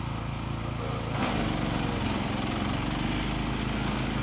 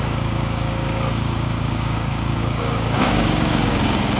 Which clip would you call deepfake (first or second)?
second